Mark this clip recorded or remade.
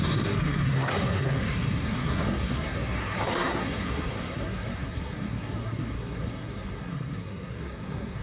remade